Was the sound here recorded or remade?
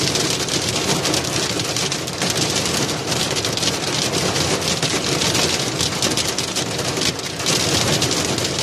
recorded